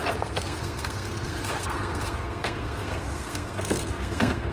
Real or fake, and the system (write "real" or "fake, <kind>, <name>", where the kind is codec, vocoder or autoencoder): fake, codec, SNAC